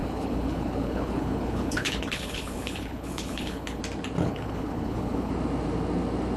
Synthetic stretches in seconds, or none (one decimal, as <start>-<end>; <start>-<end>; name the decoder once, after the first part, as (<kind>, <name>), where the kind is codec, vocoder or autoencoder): 0.0-3.8 (codec, HILCodec); 4.2-5.3